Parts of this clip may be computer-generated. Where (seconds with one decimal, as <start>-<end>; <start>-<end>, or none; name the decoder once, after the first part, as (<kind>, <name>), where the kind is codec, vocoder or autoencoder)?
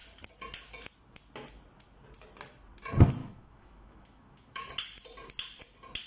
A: 3.2-4.7 (autoencoder, DAC-VAE)